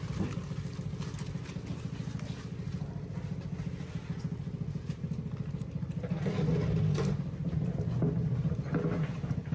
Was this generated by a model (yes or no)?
no